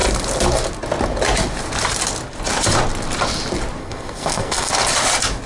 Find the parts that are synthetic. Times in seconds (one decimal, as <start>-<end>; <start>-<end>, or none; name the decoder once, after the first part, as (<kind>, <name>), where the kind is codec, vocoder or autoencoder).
3.8-4.7 (codec, SNAC)

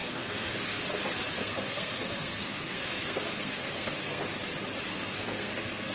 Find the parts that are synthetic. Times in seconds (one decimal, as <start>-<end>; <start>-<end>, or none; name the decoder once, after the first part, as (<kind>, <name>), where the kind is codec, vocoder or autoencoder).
0.0-0.8 (codec, SNAC); 1.4-4.2; 4.9-5.9

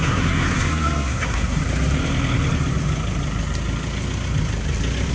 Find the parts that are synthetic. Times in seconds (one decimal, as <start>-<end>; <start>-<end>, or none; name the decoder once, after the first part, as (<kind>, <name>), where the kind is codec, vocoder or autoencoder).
0.0-1.6 (codec, SNAC)

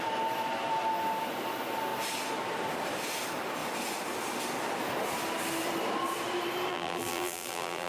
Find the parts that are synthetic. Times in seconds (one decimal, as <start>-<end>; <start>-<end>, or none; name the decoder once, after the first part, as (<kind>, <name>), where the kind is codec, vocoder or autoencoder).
6.7-7.9 (vocoder, BigVGAN v2)

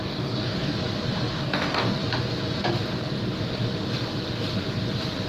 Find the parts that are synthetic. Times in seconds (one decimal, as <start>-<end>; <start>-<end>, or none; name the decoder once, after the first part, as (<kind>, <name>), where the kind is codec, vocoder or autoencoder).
0.0-0.7 (codec, DAC); 1.3-2.0

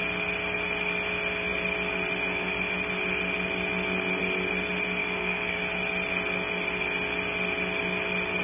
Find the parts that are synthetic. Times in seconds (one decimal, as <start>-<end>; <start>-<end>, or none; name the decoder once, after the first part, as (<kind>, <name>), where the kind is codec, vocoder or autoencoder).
5.0-5.6 (codec, DAC)

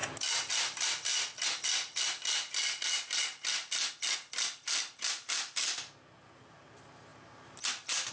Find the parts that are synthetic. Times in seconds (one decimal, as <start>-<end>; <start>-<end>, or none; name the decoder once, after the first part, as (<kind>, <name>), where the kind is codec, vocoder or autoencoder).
none